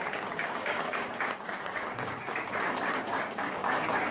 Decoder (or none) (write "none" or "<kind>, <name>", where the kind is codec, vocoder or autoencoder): codec, DAC